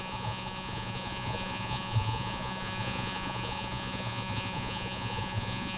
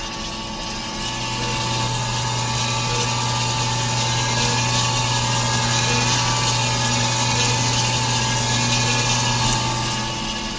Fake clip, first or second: first